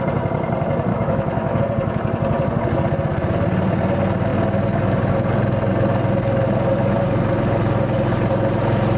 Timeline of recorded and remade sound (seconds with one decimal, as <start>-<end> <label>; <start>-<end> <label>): 0.0-0.9 recorded; 0.9-1.6 remade; 1.6-9.0 recorded